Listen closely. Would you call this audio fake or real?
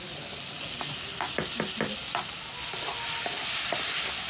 real